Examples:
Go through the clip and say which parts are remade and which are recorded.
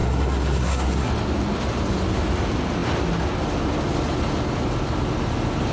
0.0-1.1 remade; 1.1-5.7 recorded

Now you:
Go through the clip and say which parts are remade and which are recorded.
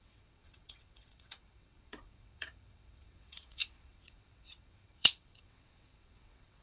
0.0-6.6 remade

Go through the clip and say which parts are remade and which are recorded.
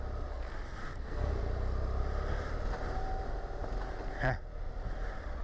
0.0-0.8 recorded; 0.8-1.4 remade; 1.4-5.4 recorded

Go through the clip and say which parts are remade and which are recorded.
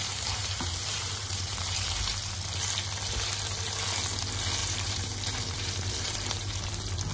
0.0-0.4 recorded; 0.4-2.1 remade; 2.1-4.6 recorded; 4.6-6.6 remade; 6.6-7.1 recorded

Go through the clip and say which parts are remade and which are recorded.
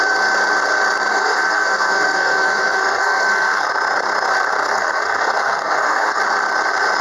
0.0-1.1 recorded; 1.1-3.7 remade; 3.7-4.6 recorded; 4.6-6.2 remade; 6.2-7.0 recorded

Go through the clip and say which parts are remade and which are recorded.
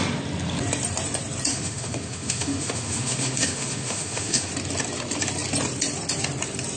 0.0-1.5 recorded; 1.5-4.5 remade; 4.5-6.8 recorded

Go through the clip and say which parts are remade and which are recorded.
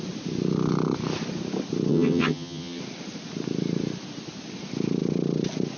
0.0-1.9 recorded; 1.9-2.8 remade; 2.8-5.8 recorded